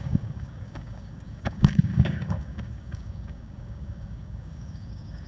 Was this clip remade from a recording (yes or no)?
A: yes